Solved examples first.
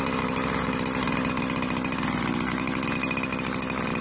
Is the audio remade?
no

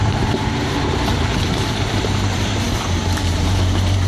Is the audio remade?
yes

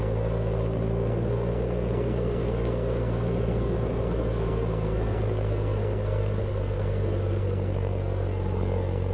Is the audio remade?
yes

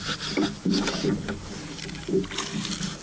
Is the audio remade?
no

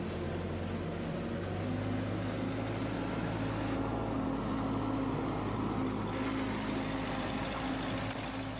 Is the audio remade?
no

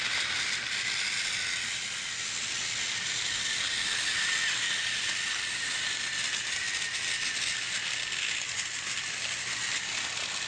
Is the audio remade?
no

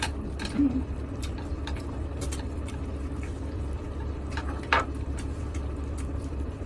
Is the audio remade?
yes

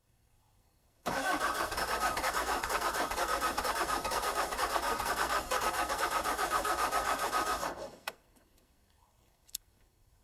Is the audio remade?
yes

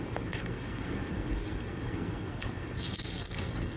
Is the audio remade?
yes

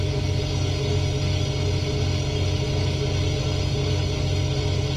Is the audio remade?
no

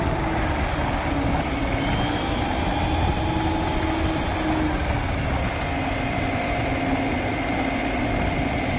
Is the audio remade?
no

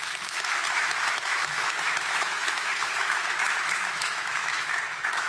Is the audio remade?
yes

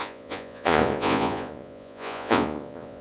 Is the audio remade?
yes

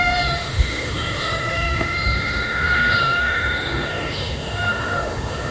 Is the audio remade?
yes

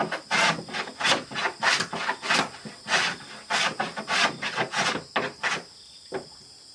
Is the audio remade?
no